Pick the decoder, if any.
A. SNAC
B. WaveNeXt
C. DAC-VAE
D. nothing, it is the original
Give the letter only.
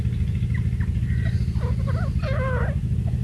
D